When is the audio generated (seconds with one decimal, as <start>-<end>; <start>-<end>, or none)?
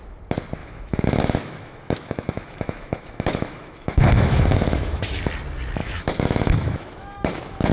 0.6-5.2; 5.8-7.7